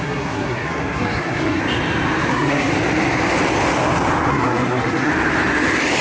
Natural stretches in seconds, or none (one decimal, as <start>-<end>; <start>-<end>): 1.6-2.3; 2.7-4.3; 5.1-6.0